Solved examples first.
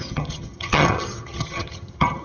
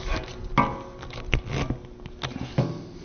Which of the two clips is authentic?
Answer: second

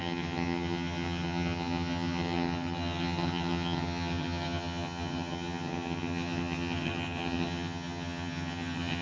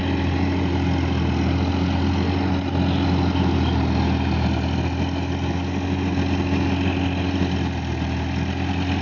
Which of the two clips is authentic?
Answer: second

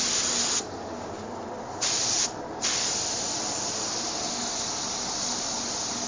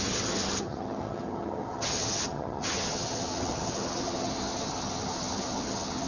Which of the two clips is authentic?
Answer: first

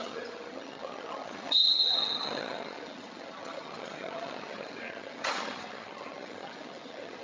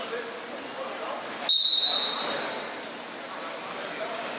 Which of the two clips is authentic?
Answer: second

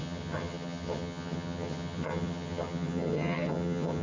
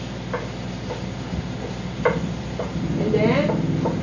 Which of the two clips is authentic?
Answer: second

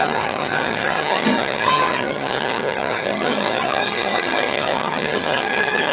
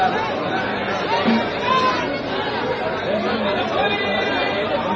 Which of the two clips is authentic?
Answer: second